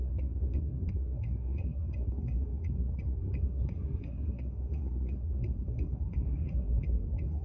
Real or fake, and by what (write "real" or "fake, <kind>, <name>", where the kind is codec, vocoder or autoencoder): fake, codec, SNAC